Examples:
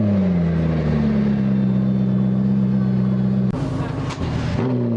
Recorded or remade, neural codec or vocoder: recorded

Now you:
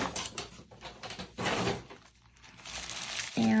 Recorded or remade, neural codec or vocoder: recorded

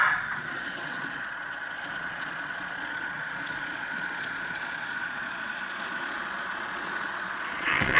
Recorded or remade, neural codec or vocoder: remade, vocoder, Vocos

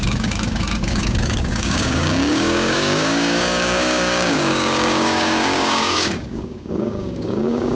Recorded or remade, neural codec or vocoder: remade, codec, DAC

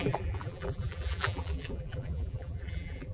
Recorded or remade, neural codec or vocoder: remade, vocoder, BigVGAN v2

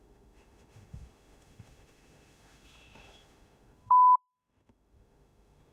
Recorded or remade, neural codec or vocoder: remade, autoencoder, DAC-VAE